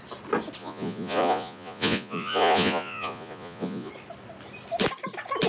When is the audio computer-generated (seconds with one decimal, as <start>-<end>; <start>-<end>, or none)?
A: 0.6-3.9

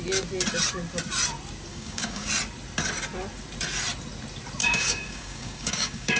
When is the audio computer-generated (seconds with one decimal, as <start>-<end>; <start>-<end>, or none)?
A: 1.7-2.3; 4.6-6.2